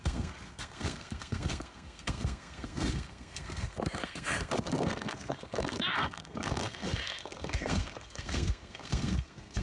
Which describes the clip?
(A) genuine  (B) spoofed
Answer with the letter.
B